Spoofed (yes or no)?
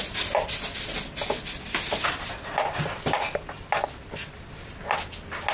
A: no